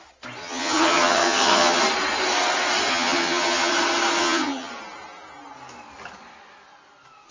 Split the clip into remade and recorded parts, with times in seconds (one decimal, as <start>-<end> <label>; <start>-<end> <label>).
0.0-0.4 recorded; 0.4-1.8 remade; 1.8-2.9 recorded; 2.9-3.7 remade; 3.7-4.2 recorded; 4.2-4.7 remade; 4.7-7.3 recorded